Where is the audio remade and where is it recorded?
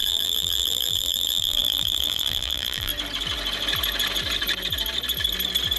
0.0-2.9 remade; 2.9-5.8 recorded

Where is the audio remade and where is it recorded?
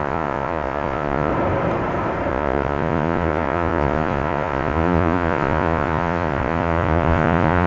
0.0-1.3 remade; 1.3-2.3 recorded; 2.3-7.7 remade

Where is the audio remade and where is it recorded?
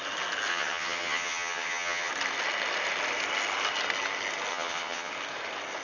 0.0-0.5 recorded; 0.5-2.1 remade; 2.1-4.5 recorded; 4.5-5.1 remade; 5.1-5.8 recorded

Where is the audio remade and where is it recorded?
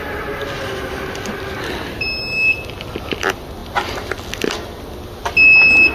0.0-1.7 remade; 1.7-3.6 recorded; 3.6-4.8 remade; 4.8-5.9 recorded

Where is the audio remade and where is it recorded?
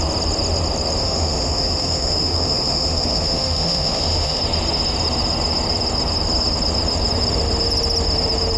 0.0-1.0 recorded; 1.0-4.4 remade; 4.4-8.6 recorded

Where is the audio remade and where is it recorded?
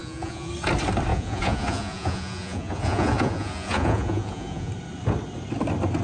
0.0-0.5 remade; 0.5-1.1 recorded; 1.1-4.7 remade; 4.7-6.0 recorded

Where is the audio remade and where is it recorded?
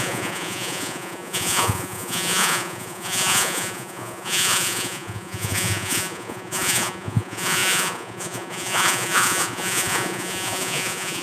0.0-11.2 remade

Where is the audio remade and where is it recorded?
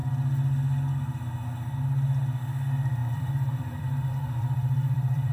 0.0-3.0 recorded; 3.0-5.3 remade